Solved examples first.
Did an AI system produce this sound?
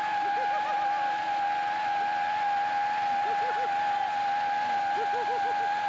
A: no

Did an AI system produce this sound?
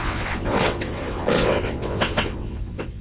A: yes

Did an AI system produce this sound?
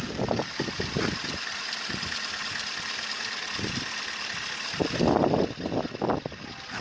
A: no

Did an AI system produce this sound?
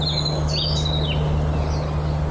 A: no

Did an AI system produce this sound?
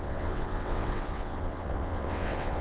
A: yes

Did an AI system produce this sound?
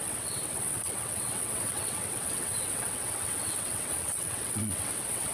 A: yes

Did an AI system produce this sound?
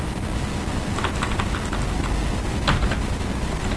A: no